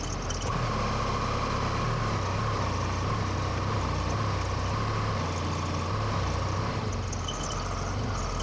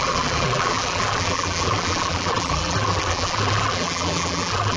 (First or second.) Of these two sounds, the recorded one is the first